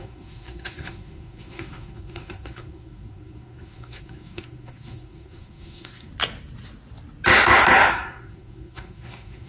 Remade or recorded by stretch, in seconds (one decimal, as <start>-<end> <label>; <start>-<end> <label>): 0.0-6.1 remade; 6.1-7.9 recorded; 7.9-9.5 remade